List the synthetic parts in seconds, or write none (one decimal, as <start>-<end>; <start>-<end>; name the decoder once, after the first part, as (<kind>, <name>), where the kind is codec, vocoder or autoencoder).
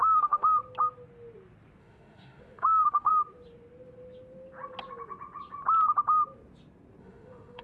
0.0-0.6 (autoencoder, DAC-VAE); 1.8-3.1; 7.0-7.6